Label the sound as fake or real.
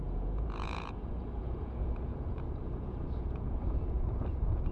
fake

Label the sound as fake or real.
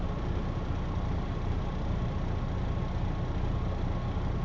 real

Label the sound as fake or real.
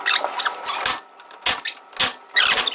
real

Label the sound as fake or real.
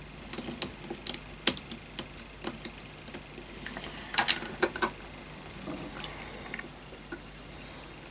real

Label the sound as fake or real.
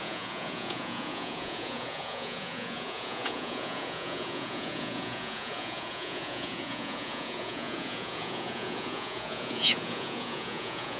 fake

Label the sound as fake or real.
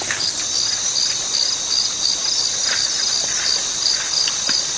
real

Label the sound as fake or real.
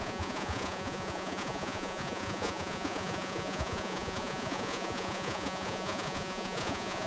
fake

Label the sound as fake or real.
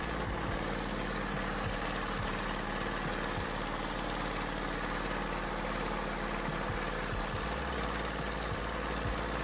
real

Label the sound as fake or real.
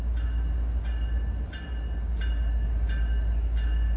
real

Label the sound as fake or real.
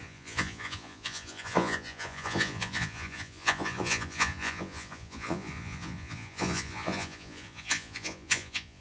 fake